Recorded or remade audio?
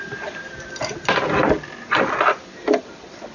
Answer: recorded